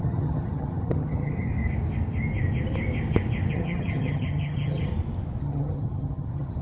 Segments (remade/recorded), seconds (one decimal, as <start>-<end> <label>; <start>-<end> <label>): 0.0-1.5 remade; 1.5-3.5 recorded; 3.5-4.9 remade; 4.9-5.4 recorded; 5.4-6.6 remade